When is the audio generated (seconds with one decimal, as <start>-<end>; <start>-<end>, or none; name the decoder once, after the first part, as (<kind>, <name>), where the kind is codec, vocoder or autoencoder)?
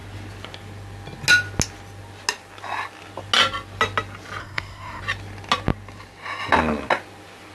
4.4-5.0 (codec, SNAC)